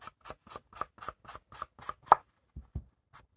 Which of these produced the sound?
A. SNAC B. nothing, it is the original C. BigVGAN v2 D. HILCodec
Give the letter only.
B